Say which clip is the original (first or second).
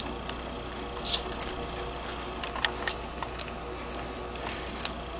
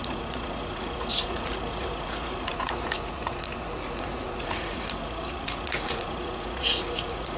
first